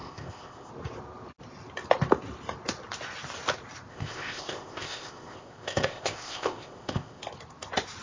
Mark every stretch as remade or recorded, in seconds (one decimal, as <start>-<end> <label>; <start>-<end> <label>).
0.0-0.7 remade; 0.7-3.9 recorded; 3.9-7.2 remade; 7.2-8.0 recorded